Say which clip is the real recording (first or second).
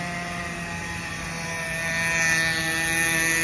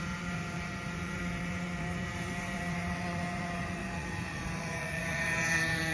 first